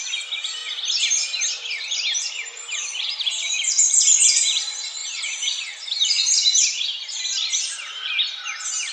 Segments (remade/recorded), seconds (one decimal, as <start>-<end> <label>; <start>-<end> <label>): 0.0-0.6 remade; 0.6-2.3 recorded; 2.3-8.9 remade